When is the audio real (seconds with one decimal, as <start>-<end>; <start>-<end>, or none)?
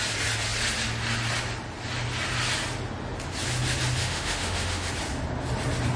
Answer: 0.0-4.0; 4.9-6.0